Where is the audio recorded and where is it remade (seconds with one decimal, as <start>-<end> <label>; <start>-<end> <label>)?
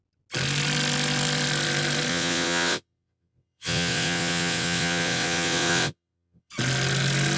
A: 0.0-2.1 recorded; 2.1-6.5 remade; 6.5-7.4 recorded